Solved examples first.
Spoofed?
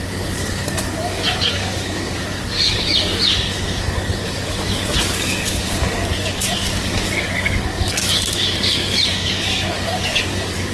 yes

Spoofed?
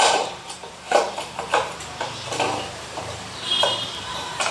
yes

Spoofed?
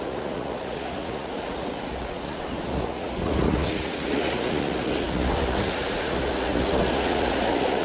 yes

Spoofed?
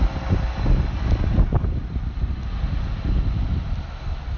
no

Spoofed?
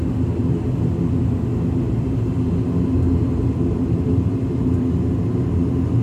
no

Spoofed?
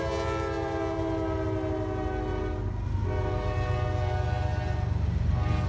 no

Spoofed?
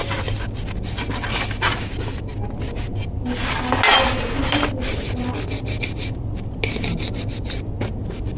no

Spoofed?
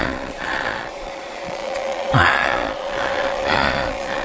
yes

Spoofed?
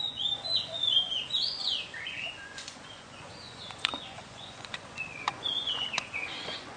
yes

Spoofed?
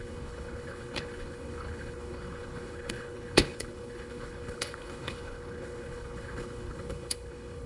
yes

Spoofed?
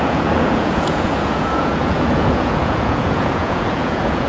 yes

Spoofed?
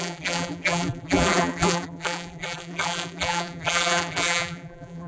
yes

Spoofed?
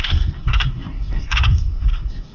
yes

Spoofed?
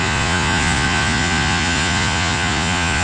yes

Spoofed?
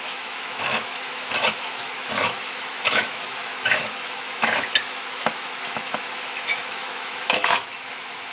yes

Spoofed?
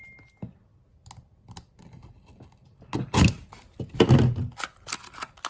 no